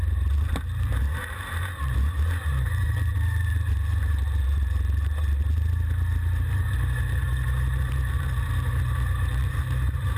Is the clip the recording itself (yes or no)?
no